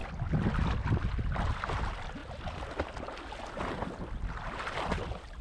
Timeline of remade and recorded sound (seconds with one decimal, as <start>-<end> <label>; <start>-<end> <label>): 0.0-5.4 recorded